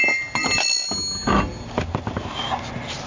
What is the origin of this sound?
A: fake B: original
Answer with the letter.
B